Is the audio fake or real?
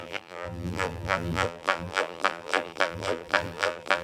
fake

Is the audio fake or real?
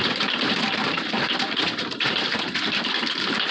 fake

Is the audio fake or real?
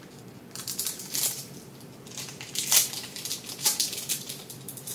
fake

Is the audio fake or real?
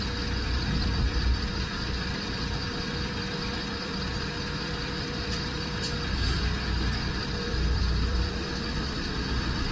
fake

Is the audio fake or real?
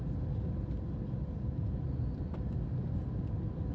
real